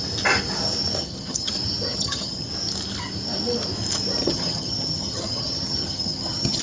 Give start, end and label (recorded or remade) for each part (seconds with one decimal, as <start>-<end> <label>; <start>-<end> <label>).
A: 0.0-1.0 recorded; 1.0-1.5 remade; 1.5-1.9 recorded; 1.9-2.5 remade; 2.5-4.2 recorded; 4.2-6.6 remade